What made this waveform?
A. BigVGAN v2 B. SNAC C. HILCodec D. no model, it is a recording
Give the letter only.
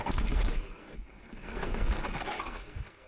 B